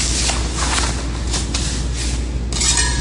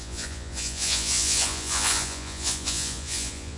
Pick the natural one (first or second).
first